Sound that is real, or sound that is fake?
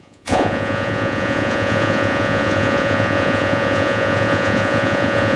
fake